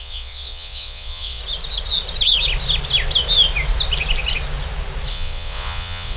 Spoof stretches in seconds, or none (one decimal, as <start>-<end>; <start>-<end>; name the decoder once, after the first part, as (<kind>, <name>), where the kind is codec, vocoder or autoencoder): 0.0-1.4 (vocoder, WaveNeXt); 5.1-6.2